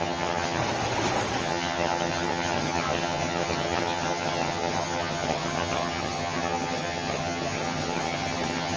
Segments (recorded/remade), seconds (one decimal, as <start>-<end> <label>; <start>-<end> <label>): 0.0-0.6 remade; 0.6-1.4 recorded; 1.4-8.8 remade